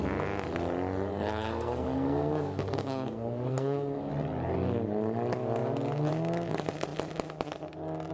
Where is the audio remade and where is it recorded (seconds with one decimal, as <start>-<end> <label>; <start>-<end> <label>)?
0.0-1.1 recorded; 1.1-4.1 remade; 4.1-8.1 recorded